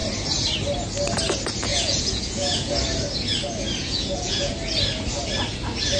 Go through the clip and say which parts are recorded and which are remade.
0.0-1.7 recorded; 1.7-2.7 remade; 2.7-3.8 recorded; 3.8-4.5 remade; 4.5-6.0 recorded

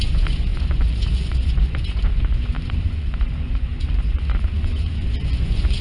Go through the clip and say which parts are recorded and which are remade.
0.0-5.8 remade

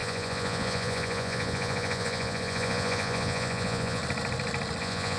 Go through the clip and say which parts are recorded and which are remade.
0.0-4.0 remade; 4.0-4.8 recorded; 4.8-5.2 remade

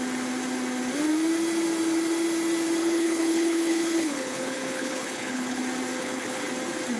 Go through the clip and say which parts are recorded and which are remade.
0.0-2.8 recorded; 2.8-5.6 remade; 5.6-6.0 recorded; 6.0-6.5 remade; 6.5-7.0 recorded